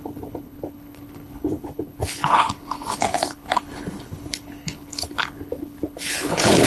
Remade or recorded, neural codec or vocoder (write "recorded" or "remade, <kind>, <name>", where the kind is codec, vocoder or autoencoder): remade, codec, HILCodec